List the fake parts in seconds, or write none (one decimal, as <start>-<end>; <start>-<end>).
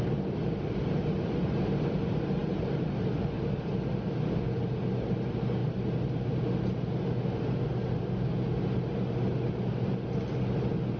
none